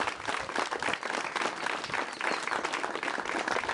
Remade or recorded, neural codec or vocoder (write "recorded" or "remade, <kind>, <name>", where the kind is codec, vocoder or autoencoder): recorded